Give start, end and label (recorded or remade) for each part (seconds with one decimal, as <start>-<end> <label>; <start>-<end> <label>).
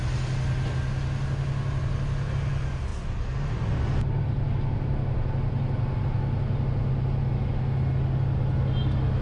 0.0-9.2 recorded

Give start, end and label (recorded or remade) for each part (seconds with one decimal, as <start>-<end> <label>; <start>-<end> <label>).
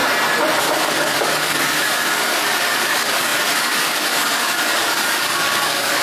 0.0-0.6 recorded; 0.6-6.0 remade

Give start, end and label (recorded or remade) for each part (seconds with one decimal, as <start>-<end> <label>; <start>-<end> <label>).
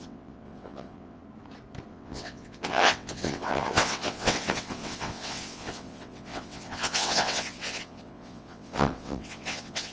0.0-1.2 remade; 1.2-1.9 recorded; 1.9-9.9 remade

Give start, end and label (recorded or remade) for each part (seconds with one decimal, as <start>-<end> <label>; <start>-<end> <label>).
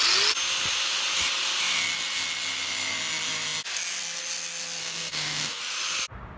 0.0-4.8 recorded; 4.8-5.6 remade; 5.6-6.4 recorded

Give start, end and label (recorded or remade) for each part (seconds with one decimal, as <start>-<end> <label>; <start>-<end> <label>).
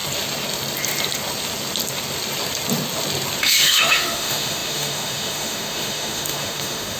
0.0-3.4 recorded; 3.4-7.0 remade